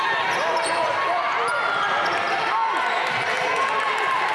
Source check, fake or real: real